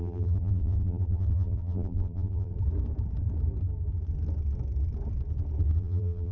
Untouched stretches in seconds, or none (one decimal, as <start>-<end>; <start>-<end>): 2.5-5.8